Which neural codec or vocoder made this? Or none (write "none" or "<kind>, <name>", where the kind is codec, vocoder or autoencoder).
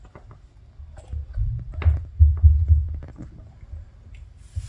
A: none